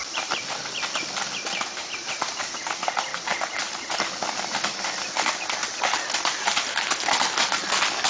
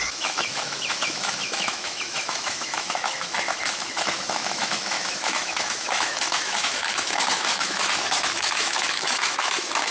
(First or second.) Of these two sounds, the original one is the first